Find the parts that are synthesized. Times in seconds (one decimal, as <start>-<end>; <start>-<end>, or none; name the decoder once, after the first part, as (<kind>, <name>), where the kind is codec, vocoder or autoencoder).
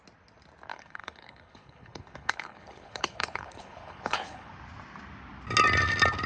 0.7-4.5 (codec, HILCodec)